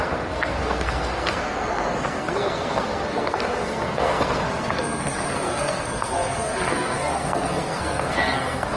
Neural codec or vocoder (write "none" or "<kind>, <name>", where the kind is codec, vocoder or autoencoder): codec, SNAC